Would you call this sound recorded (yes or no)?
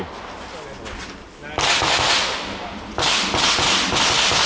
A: yes